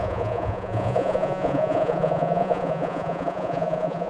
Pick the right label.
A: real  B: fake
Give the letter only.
B